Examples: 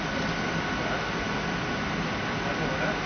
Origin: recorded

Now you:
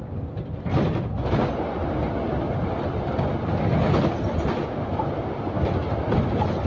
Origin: recorded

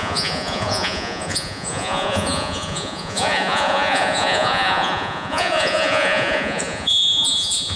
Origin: remade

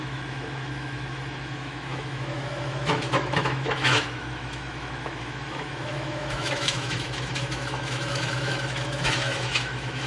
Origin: remade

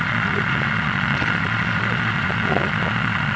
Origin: remade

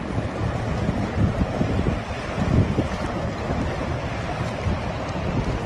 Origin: recorded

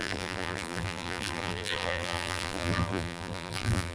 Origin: remade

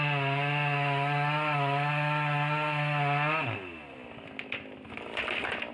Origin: recorded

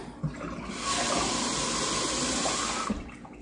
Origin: recorded